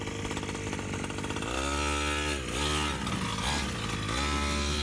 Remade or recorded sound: recorded